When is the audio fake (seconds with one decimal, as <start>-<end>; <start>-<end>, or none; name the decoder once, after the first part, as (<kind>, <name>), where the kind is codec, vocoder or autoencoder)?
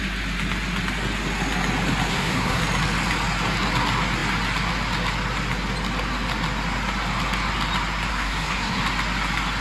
2.1-2.6 (codec, SNAC); 8.1-8.8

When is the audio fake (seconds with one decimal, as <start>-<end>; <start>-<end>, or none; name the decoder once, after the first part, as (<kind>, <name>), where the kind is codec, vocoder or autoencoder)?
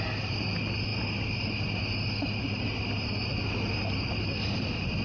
none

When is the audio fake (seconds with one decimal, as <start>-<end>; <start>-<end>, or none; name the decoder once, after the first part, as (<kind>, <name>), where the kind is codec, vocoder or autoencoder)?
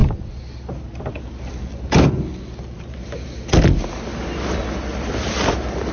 none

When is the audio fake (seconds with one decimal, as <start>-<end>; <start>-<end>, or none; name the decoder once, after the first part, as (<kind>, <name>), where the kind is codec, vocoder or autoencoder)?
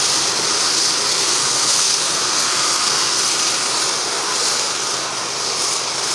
1.1-3.2 (codec, SNAC)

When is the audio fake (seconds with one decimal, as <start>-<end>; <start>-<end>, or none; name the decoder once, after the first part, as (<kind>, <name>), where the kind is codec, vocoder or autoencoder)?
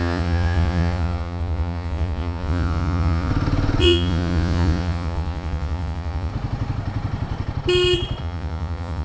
0.0-3.3 (vocoder, Vocos); 3.8-6.3; 8.2-9.0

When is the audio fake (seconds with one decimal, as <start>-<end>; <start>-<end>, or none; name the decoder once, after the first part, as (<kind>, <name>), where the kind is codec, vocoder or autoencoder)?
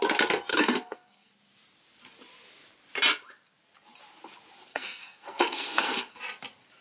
0.5-1.3 (codec, SNAC); 4.7-6.2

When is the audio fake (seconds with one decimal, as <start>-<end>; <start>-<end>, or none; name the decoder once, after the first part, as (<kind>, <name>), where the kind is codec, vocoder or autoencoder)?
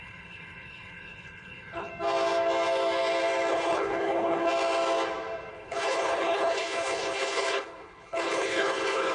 0.0-1.9 (codec, HILCodec); 3.5-4.5; 5.5-9.1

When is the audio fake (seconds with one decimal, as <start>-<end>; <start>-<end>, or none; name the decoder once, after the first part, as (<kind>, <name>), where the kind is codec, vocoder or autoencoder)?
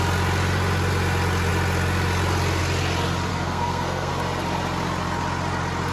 3.3-4.1 (codec, SNAC)